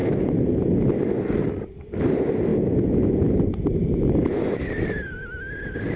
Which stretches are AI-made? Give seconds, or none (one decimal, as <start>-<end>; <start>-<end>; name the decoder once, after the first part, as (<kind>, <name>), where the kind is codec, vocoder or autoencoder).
none